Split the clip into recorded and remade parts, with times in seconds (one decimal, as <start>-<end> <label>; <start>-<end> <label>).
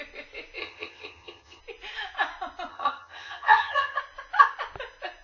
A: 0.0-0.6 recorded; 0.6-1.6 remade; 1.6-2.7 recorded; 2.7-4.0 remade; 4.0-5.2 recorded